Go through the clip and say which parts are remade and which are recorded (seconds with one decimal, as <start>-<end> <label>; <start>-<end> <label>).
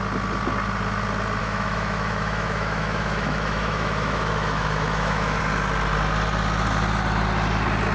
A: 0.0-1.4 recorded; 1.4-5.4 remade; 5.4-7.9 recorded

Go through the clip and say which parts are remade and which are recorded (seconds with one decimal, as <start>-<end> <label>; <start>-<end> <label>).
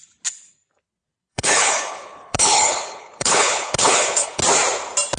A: 0.0-1.3 recorded; 1.3-4.4 remade; 4.4-5.2 recorded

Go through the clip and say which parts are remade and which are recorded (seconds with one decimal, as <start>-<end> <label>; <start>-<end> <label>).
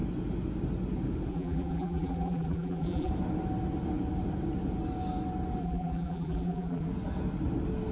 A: 0.0-1.3 recorded; 1.3-3.1 remade; 3.1-5.6 recorded; 5.6-6.9 remade; 6.9-7.9 recorded